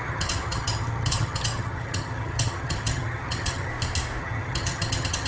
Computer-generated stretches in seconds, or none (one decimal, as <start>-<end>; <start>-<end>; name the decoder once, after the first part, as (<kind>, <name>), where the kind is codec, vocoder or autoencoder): 0.0-3.7 (vocoder, HiFi-GAN); 4.2-5.3